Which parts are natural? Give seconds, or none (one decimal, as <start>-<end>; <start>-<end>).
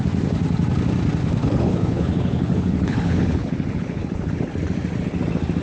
0.0-1.4; 4.3-5.6